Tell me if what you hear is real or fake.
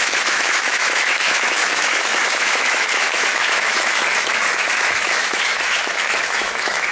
fake